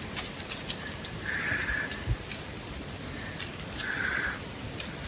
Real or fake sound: real